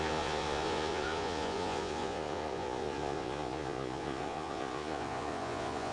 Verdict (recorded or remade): remade